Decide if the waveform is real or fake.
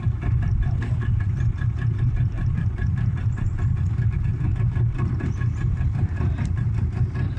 fake